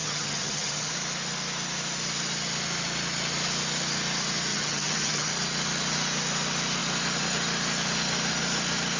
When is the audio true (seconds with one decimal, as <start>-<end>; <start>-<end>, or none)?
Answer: 0.9-4.5; 5.3-9.0